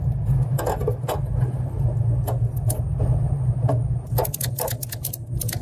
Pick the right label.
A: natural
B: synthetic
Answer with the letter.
A